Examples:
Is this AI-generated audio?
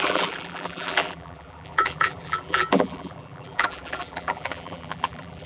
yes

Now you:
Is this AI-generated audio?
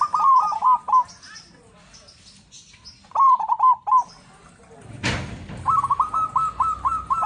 no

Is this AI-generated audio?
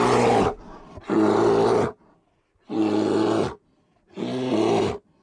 no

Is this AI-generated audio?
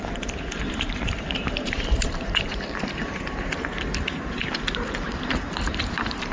yes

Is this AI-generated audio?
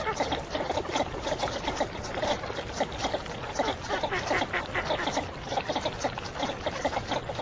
no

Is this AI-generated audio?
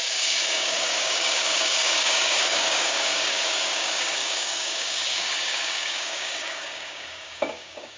yes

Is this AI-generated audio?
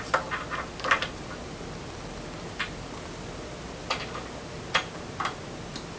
no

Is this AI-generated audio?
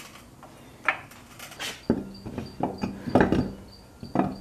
no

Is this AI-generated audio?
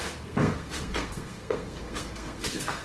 yes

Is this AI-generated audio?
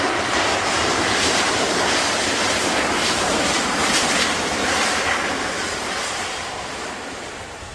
yes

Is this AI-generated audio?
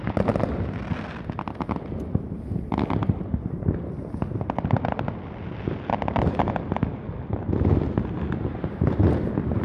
no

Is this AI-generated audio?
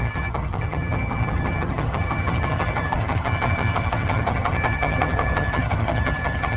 yes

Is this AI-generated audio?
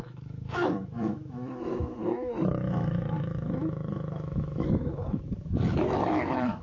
yes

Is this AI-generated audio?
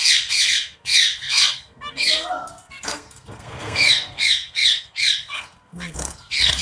yes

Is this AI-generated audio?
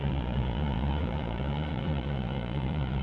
yes